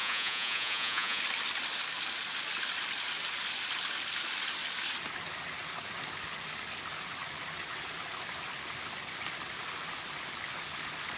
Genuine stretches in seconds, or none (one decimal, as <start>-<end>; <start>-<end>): 1.2-11.2